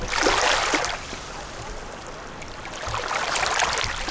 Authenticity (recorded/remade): recorded